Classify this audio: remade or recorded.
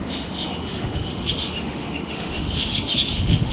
remade